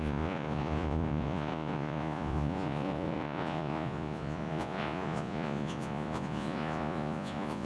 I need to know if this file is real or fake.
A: fake